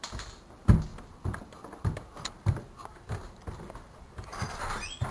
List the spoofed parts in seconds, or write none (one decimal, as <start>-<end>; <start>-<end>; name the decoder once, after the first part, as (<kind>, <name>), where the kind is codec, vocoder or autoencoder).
none